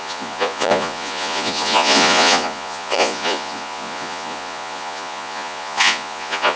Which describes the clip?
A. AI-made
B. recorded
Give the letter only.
A